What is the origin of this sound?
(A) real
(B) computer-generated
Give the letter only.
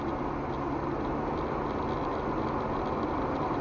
A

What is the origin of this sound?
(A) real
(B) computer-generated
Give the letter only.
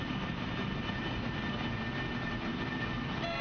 A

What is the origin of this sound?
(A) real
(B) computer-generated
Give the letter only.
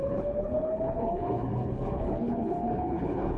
B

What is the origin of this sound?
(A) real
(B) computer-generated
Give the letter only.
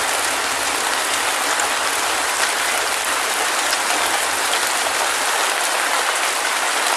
A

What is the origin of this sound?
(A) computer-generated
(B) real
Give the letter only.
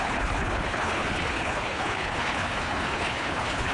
A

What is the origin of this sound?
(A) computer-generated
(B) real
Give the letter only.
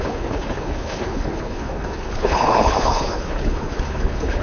A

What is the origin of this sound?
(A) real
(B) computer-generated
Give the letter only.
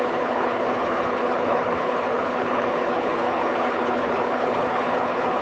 B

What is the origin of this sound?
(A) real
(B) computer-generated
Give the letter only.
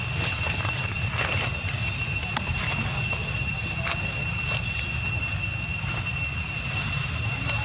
A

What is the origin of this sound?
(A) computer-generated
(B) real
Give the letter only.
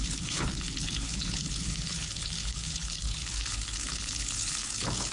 A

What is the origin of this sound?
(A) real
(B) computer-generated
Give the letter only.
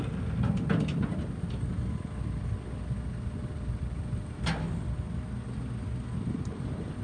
A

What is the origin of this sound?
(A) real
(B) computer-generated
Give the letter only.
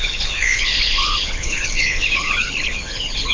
B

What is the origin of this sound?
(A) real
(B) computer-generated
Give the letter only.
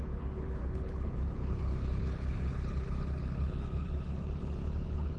B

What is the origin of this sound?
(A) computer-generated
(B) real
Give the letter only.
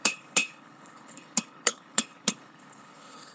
A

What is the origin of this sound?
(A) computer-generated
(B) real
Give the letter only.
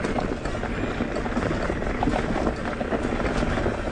B